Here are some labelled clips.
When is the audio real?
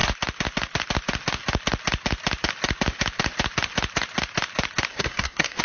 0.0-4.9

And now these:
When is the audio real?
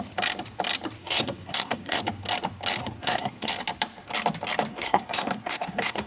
0.0-1.0; 2.0-2.8; 3.5-4.7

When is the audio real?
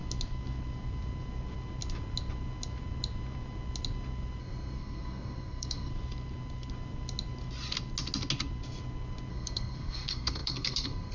0.0-4.4; 5.9-9.3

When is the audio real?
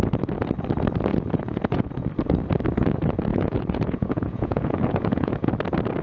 0.0-1.1; 2.1-3.3; 5.5-6.0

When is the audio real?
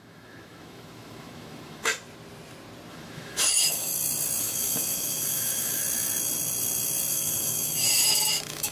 1.9-2.9; 3.9-4.4; 5.8-7.1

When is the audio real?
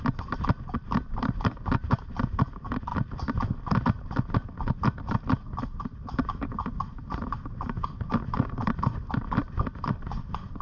0.0-10.6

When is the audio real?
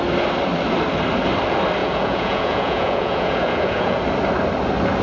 0.0-1.8; 4.0-5.0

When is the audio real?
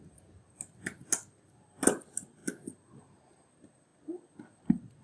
0.0-5.0